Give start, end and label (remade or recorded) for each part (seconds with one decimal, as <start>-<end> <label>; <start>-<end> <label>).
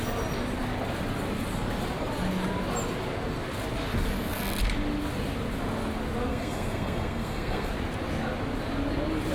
0.0-6.3 recorded; 6.3-7.7 remade; 7.7-9.3 recorded